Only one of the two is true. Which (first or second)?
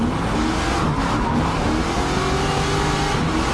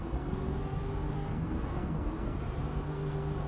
first